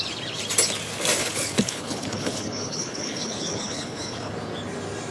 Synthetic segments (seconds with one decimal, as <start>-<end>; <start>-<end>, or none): 1.2-4.3